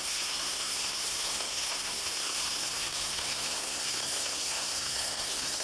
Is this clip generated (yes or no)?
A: yes